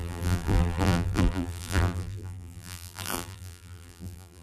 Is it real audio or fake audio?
fake